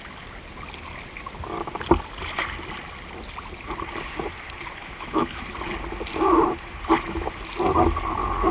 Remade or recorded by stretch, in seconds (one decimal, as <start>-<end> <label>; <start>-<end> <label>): 0.0-4.8 recorded; 4.8-5.4 remade; 5.4-8.5 recorded